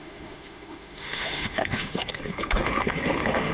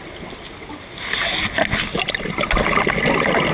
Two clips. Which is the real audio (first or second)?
second